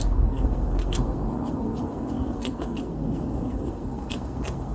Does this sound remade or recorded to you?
remade